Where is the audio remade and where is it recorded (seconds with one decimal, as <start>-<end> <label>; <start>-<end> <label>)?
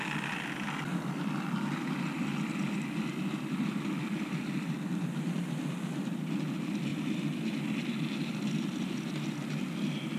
0.0-6.9 recorded; 6.9-7.6 remade; 7.6-10.2 recorded